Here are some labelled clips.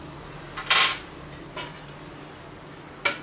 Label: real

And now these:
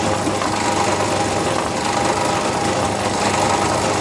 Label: real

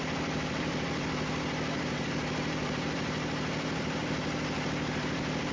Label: fake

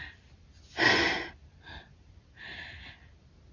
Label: real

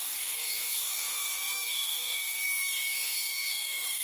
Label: fake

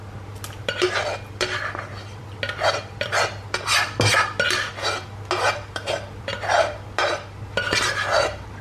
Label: real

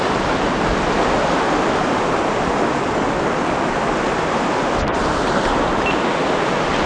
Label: real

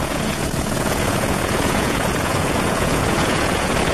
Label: fake